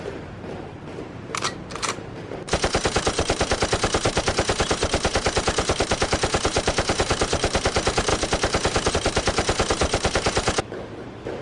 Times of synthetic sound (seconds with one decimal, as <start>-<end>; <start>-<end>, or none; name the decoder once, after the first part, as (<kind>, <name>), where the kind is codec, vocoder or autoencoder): 0.0-8.1 (vocoder, BigVGAN v2); 8.9-11.4